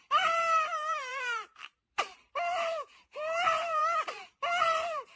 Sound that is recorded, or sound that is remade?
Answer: remade